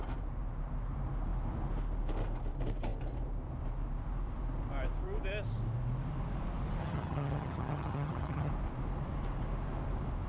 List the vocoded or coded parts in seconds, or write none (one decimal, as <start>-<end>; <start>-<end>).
6.8-8.5